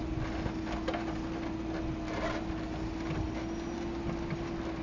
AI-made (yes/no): no